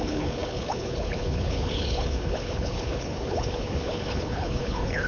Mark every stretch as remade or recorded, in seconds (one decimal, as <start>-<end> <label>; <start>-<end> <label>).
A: 0.0-5.1 remade